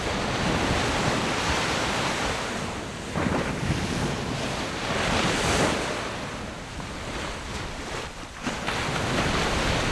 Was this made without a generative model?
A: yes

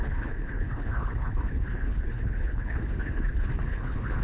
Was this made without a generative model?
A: no